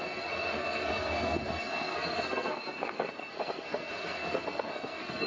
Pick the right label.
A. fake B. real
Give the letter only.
A